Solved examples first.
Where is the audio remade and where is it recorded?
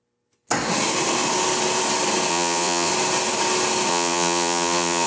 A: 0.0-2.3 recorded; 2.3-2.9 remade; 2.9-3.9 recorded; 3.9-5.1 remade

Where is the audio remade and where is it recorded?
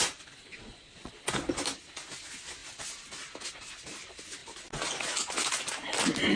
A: 0.0-0.5 recorded; 0.5-1.1 remade; 1.1-6.4 recorded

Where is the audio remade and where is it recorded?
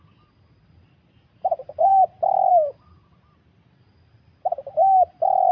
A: 0.0-5.5 recorded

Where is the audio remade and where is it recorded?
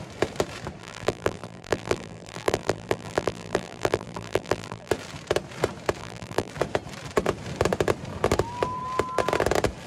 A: 0.0-0.8 recorded; 0.8-4.9 remade; 4.9-6.0 recorded; 6.0-6.5 remade; 6.5-9.9 recorded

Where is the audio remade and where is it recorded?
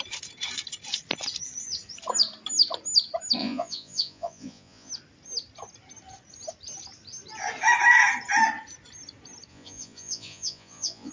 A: 0.0-3.4 recorded; 3.4-4.9 remade; 4.9-9.5 recorded; 9.5-11.1 remade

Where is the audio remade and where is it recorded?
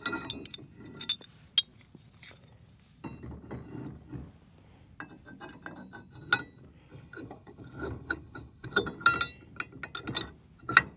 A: 0.0-6.9 recorded; 6.9-8.8 remade; 8.8-11.0 recorded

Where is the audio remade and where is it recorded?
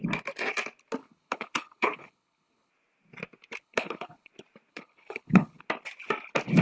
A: 0.0-1.0 recorded; 1.0-2.7 remade; 2.7-3.6 recorded; 3.6-4.3 remade; 4.3-4.7 recorded; 4.7-5.6 remade; 5.6-6.6 recorded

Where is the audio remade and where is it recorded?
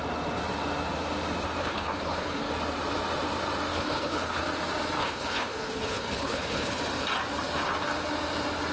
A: 0.0-1.6 recorded; 1.6-2.5 remade; 2.5-3.7 recorded; 3.7-4.4 remade; 4.4-5.0 recorded; 5.0-6.8 remade; 6.8-8.7 recorded